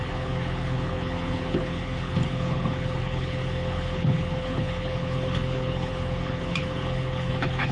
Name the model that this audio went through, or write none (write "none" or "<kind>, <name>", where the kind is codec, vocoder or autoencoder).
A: codec, HILCodec